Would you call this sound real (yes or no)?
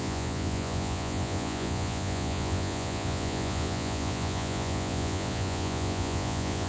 no